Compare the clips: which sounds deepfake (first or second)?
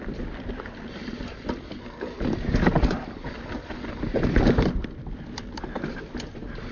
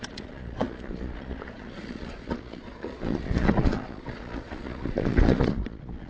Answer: second